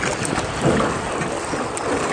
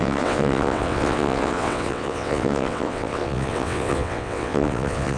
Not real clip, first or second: second